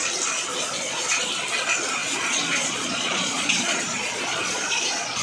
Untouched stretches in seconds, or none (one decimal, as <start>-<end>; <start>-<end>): 0.0-0.5; 1.3-2.0